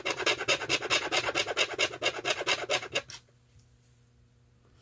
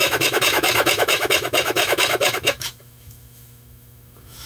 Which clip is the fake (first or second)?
second